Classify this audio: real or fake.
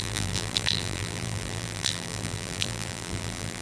fake